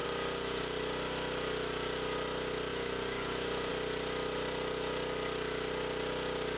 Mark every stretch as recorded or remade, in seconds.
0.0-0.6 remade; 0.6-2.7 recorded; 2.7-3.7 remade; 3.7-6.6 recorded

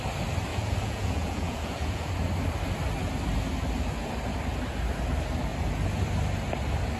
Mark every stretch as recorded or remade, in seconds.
0.0-0.5 recorded; 0.5-2.1 remade; 2.1-7.0 recorded

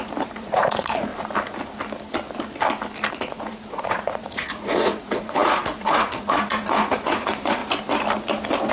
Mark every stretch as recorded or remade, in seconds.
0.0-1.1 remade; 1.1-3.1 recorded; 3.1-7.6 remade; 7.6-8.7 recorded

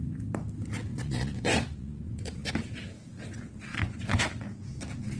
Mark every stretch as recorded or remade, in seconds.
0.0-0.9 recorded; 0.9-2.5 remade; 2.5-3.7 recorded; 3.7-4.2 remade; 4.2-5.2 recorded

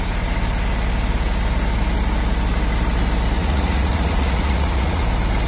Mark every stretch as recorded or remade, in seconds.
0.0-3.4 recorded; 3.4-5.0 remade; 5.0-5.5 recorded